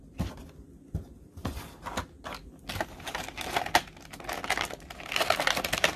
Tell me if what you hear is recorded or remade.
recorded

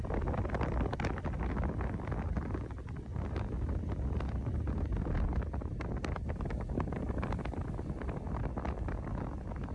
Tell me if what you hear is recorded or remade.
recorded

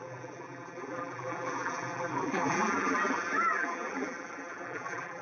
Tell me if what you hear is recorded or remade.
remade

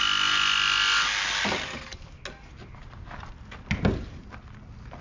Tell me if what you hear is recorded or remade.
recorded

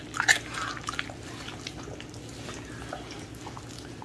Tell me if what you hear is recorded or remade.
recorded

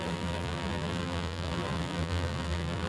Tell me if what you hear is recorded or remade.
remade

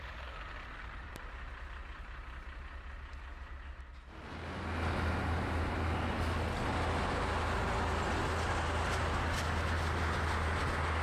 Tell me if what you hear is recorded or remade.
recorded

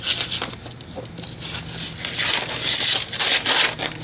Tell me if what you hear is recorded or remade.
recorded